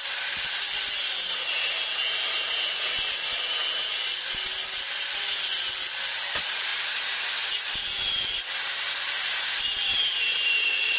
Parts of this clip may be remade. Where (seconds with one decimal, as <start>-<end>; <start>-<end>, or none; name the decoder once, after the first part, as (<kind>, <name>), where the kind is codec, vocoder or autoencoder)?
0.0-6.7 (vocoder, BigVGAN v2); 8.4-11.0